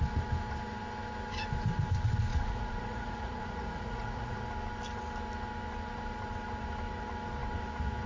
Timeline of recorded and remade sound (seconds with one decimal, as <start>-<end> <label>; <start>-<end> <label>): 0.0-2.3 recorded; 2.3-4.4 remade; 4.4-8.1 recorded